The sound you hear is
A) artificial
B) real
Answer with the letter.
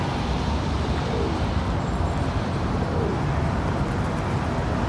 B